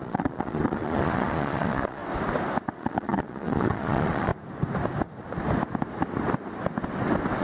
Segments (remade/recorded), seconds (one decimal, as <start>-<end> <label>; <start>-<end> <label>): 0.0-2.0 remade; 2.0-2.6 recorded; 2.6-4.3 remade; 4.3-7.4 recorded